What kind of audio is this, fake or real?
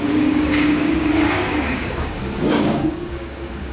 fake